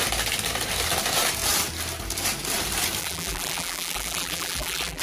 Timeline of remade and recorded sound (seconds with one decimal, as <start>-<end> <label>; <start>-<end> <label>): 0.0-3.0 recorded; 3.0-5.0 remade